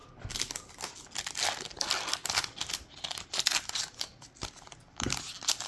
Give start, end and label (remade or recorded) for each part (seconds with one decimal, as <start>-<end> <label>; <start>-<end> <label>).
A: 0.0-5.7 recorded